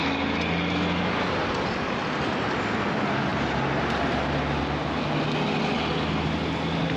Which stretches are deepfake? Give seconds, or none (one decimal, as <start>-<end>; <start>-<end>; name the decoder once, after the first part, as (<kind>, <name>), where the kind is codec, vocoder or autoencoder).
none